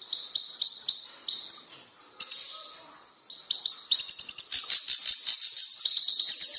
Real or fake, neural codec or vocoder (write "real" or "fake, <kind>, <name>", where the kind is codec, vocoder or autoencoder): real